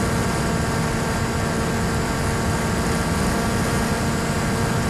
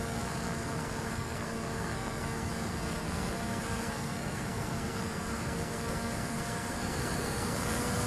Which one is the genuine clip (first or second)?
first